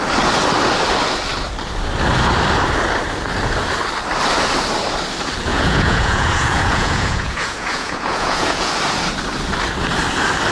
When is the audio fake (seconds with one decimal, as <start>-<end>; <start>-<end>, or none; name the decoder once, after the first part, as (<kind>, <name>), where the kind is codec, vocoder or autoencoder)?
5.5-8.7 (vocoder, Vocos)